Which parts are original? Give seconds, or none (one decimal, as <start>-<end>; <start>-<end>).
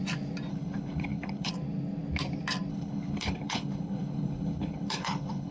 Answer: 0.0-0.5; 1.5-2.7